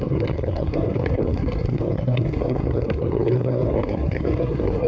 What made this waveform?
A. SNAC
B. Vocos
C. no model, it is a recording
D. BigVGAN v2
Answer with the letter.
A